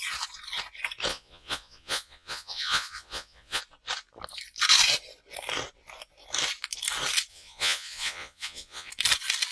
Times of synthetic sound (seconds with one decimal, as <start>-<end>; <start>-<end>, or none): 1.1-3.6; 7.3-8.9